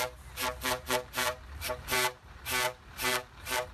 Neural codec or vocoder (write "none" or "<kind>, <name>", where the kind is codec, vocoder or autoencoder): vocoder, BigVGAN v2